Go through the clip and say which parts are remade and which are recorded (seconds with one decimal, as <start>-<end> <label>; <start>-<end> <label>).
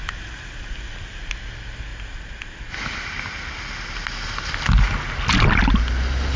0.0-6.4 recorded